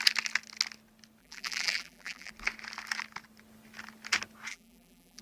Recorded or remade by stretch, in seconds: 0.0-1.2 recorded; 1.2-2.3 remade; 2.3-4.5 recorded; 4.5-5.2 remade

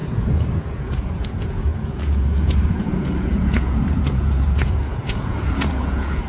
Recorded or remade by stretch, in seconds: 0.0-6.3 remade

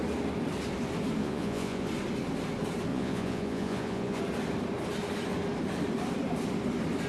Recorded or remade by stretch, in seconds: 0.0-1.2 recorded; 1.2-1.9 remade; 1.9-2.9 recorded; 2.9-4.2 remade; 4.2-7.1 recorded

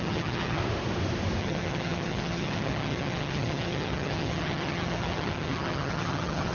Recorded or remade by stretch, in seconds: 0.0-0.6 remade; 0.6-1.4 recorded; 1.4-6.5 remade

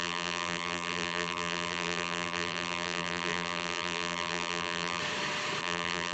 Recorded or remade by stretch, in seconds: 0.0-5.0 remade; 5.0-5.6 recorded; 5.6-6.1 remade

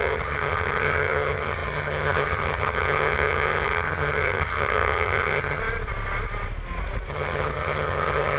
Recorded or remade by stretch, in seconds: 0.0-5.6 remade; 5.6-7.1 recorded; 7.1-8.4 remade

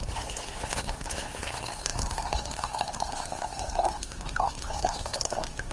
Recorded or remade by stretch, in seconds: 0.0-5.7 remade

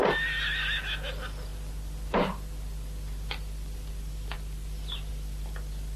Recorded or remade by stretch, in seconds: 0.0-6.0 recorded